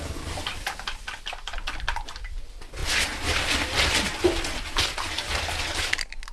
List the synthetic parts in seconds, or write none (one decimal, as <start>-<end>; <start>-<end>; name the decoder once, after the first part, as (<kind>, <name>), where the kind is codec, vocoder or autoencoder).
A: none

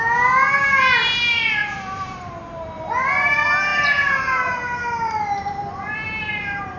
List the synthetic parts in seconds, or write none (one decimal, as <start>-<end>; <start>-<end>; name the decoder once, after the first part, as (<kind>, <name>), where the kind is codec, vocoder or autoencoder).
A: 1.6-2.9 (vocoder, BigVGAN v2)

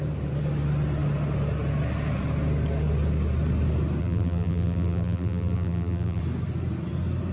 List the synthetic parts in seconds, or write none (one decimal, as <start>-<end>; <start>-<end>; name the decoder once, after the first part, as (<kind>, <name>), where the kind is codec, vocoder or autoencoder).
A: 4.0-6.2 (vocoder, BigVGAN v2)

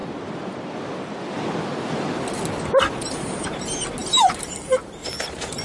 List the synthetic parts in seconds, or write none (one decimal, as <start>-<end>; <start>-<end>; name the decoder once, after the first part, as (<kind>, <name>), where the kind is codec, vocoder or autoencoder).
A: 4.0-5.6 (vocoder, BigVGAN v2)

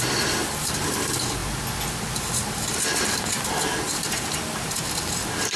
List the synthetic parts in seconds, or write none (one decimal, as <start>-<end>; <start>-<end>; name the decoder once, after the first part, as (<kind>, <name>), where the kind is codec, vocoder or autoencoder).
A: none